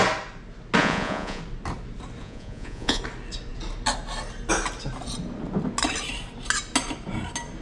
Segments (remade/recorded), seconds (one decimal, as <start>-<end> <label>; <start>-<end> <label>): 0.0-0.8 recorded; 0.8-1.4 remade; 1.4-2.2 recorded; 2.2-3.0 remade; 3.0-7.6 recorded